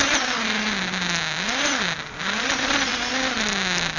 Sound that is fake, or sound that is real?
real